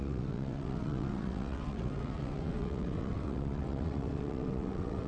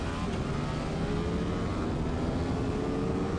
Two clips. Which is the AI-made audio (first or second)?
first